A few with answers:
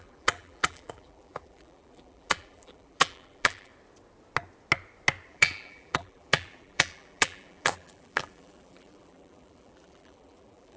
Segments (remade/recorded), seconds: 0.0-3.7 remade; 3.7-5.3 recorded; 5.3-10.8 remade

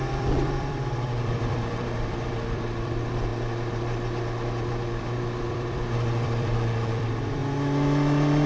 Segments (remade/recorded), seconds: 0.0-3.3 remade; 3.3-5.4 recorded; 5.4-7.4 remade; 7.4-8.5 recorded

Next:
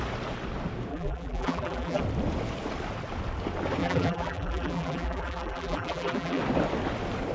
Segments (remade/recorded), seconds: 0.0-0.9 recorded; 0.9-2.0 remade; 2.0-3.8 recorded; 3.8-6.4 remade; 6.4-7.3 recorded

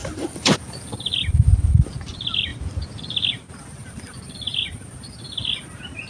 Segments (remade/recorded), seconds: 0.0-0.8 remade; 0.8-3.8 recorded; 3.8-4.4 remade; 4.4-6.1 recorded